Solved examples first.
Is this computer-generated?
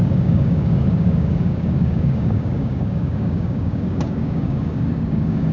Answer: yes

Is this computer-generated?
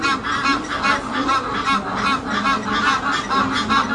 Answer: no